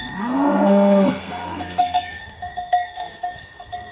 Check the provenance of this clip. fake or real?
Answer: fake